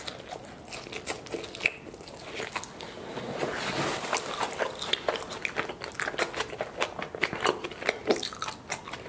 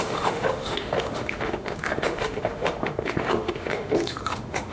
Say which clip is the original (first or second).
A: first